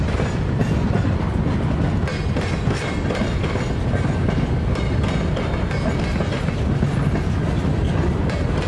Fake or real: real